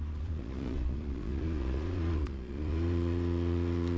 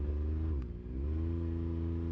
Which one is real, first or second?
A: second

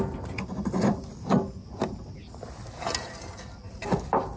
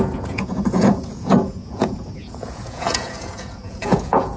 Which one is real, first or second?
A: first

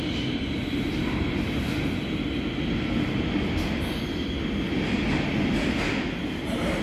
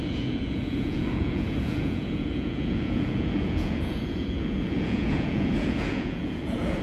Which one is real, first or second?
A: first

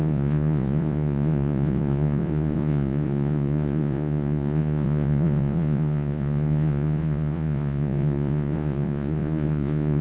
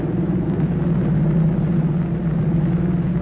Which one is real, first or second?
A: second